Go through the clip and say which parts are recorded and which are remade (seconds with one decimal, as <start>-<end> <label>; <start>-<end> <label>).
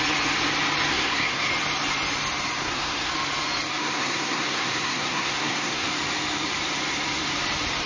0.0-0.9 recorded; 0.9-1.5 remade; 1.5-2.6 recorded; 2.6-3.1 remade; 3.1-3.8 recorded; 3.8-5.9 remade; 5.9-7.9 recorded